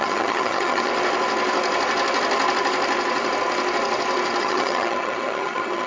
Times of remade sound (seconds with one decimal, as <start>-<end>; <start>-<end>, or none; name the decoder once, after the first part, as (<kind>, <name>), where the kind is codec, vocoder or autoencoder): 0.0-0.9 (vocoder, HiFi-GAN); 4.4-5.9